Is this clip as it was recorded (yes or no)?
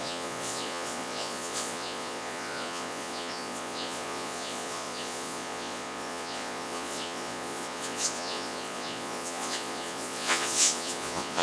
no